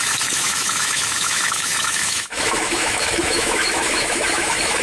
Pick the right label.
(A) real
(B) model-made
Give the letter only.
B